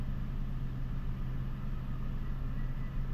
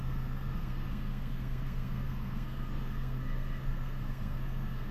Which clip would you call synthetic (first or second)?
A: second